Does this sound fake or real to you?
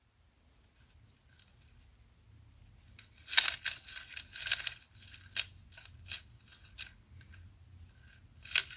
real